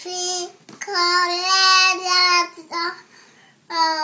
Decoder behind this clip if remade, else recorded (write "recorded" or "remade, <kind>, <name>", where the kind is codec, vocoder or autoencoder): recorded